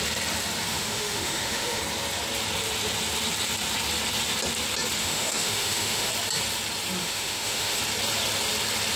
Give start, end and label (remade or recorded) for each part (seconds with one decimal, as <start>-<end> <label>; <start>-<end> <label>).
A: 0.0-0.7 recorded; 0.7-1.8 remade; 1.8-5.0 recorded; 5.0-6.1 remade; 6.1-7.0 recorded; 7.0-7.8 remade; 7.8-9.0 recorded